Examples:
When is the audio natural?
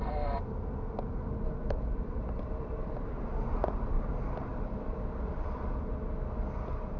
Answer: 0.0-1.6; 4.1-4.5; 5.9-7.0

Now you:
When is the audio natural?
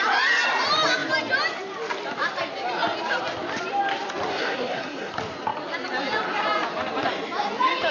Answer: 0.0-4.3; 5.1-7.9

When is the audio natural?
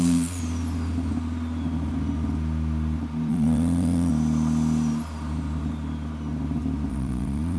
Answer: 0.4-3.3; 4.1-6.9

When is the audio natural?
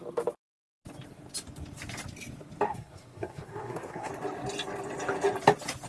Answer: 0.0-2.7; 4.1-5.9